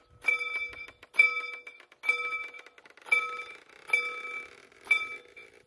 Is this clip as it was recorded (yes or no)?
yes